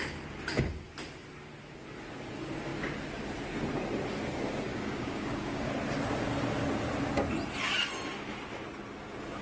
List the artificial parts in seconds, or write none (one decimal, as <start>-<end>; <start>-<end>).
4.7-5.7